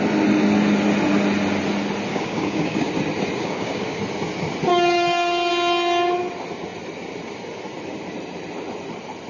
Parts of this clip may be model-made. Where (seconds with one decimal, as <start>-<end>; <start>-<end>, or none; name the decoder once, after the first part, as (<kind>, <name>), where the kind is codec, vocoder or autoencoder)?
2.1-2.9 (codec, DAC); 3.4-4.0; 4.7-5.5